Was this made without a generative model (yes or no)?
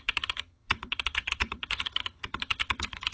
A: no